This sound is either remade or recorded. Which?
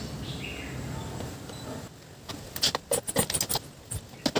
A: recorded